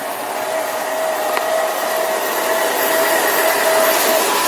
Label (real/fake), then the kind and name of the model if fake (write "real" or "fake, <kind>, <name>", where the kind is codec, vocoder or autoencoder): real